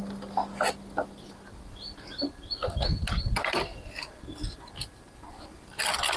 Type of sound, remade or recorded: recorded